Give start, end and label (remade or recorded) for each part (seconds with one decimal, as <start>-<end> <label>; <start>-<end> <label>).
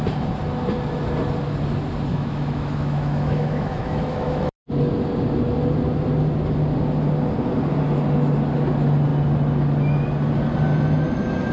0.0-2.1 recorded; 2.1-4.7 remade; 4.7-11.5 recorded